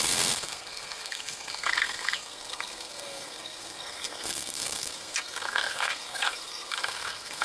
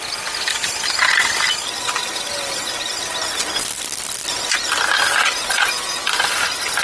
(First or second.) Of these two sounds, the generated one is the first